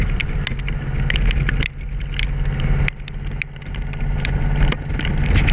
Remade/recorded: recorded